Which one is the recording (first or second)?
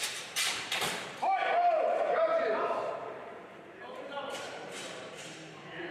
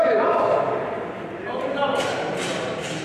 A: second